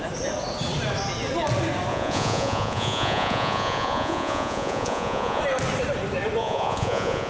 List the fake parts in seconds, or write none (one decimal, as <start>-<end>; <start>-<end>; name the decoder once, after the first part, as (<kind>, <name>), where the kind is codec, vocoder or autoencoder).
1.9-5.4 (vocoder, Vocos); 6.4-7.3